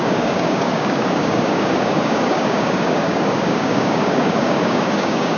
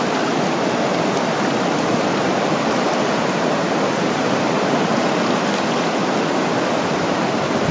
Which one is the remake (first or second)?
first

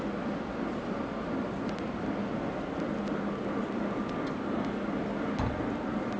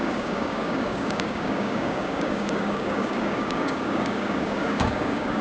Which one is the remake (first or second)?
second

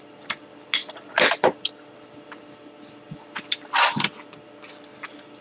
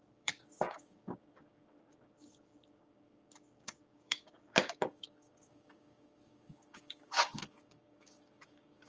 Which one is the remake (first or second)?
second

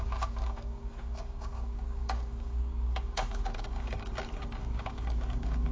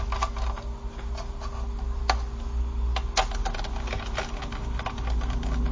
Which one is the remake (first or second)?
first